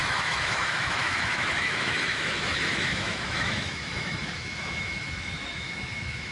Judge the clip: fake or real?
fake